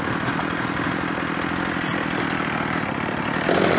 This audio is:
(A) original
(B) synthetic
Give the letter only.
A